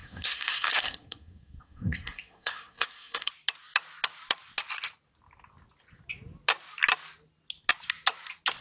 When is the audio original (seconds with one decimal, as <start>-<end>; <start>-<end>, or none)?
3.3-8.6